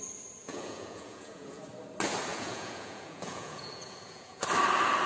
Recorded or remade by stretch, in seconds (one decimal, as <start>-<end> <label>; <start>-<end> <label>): 0.0-0.4 recorded; 0.4-1.6 remade; 1.6-2.3 recorded; 2.3-4.4 remade; 4.4-5.1 recorded